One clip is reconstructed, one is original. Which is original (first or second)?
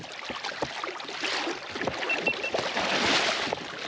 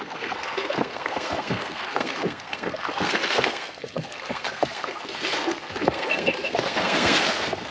first